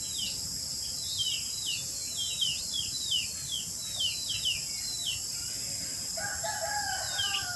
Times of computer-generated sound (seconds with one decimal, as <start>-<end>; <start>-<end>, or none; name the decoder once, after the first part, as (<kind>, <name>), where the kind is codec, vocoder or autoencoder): none